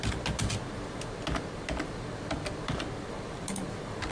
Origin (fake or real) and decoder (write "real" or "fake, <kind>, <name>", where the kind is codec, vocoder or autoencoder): real